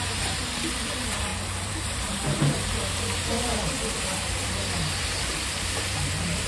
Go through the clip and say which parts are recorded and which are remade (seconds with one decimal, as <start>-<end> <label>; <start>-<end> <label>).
0.0-6.5 remade